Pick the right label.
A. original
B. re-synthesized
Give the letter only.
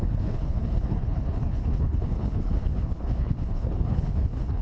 B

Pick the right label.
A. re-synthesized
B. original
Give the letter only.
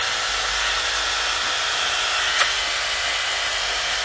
B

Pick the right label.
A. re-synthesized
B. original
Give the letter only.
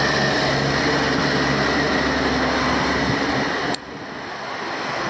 B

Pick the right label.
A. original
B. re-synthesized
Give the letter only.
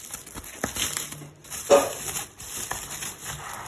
A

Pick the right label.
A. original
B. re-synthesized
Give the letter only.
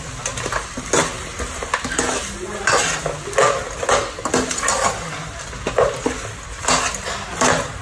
A